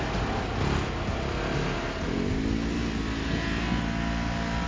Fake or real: real